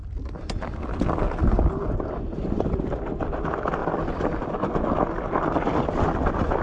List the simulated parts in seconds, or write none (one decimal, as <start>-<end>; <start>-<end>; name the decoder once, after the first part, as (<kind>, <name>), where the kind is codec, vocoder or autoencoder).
3.8-4.5 (vocoder, BigVGAN v2)